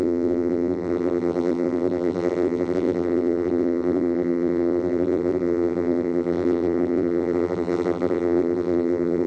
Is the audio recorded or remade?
remade